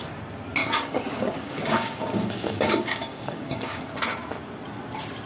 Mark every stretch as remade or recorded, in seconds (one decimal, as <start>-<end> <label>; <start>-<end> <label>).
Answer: 0.0-0.6 recorded; 0.6-3.8 remade; 3.8-5.3 recorded